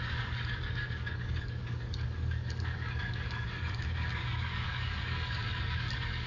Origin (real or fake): fake